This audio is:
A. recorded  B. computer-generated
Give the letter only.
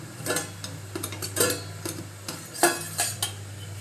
A